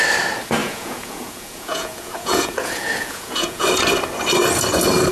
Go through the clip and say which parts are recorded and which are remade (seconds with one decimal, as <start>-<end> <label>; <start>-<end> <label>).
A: 0.0-0.6 recorded; 0.6-3.7 remade; 3.7-5.1 recorded